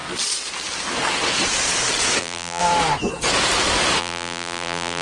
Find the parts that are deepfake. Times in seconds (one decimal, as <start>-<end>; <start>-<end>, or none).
2.2-2.6; 4.0-5.0